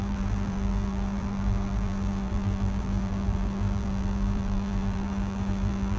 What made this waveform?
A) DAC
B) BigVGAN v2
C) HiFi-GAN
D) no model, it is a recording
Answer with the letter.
B